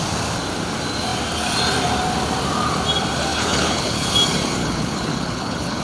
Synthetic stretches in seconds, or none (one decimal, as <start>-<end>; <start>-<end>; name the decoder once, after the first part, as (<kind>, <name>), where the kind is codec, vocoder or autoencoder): 3.3-4.1 (codec, HILCodec); 4.6-5.8